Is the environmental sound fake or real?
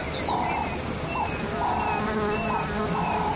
real